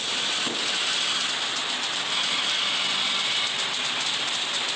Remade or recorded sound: recorded